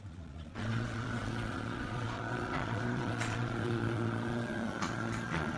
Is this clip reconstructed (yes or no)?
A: yes